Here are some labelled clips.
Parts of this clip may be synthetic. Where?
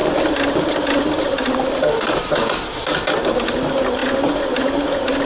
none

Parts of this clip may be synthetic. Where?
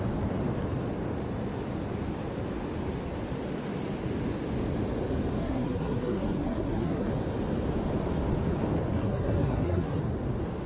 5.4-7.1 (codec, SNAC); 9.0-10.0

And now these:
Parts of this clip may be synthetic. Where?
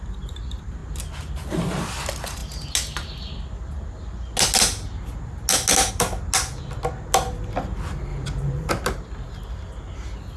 8.1-8.7 (vocoder, BigVGAN v2)